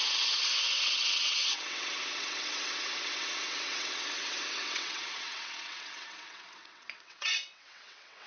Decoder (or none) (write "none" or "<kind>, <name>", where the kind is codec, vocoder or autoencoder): vocoder, WaveNeXt